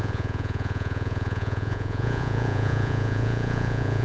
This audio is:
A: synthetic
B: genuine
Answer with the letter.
A